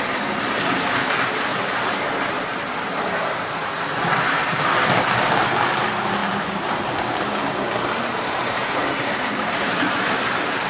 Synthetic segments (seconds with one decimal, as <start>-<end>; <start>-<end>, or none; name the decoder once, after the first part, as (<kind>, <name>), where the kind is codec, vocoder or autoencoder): 6.2-10.7 (vocoder, BigVGAN v2)